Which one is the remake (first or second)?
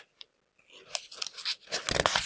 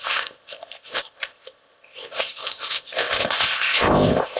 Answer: second